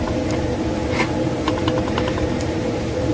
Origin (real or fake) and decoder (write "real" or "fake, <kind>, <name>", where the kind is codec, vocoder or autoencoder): fake, vocoder, BigVGAN v2